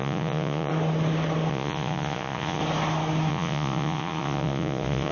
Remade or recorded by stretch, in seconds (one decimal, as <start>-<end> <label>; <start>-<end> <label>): 0.0-0.7 remade; 0.7-1.5 recorded; 1.5-2.6 remade; 2.6-3.3 recorded; 3.3-5.1 remade